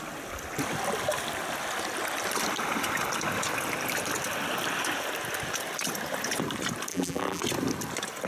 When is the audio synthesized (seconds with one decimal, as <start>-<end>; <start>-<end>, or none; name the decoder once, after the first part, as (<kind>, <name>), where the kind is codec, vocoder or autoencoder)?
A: 6.9-7.4 (vocoder, BigVGAN v2)